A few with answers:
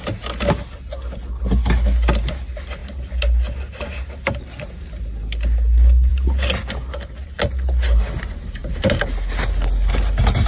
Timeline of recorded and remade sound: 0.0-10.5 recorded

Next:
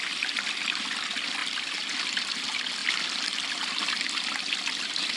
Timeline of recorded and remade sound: 0.0-5.2 recorded

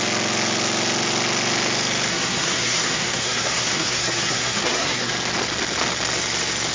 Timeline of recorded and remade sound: 0.0-2.1 recorded; 2.1-5.1 remade; 5.1-6.7 recorded

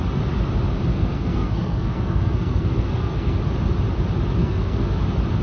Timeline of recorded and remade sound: 0.0-0.9 recorded; 0.9-3.4 remade; 3.4-4.4 recorded; 4.4-5.0 remade; 5.0-5.4 recorded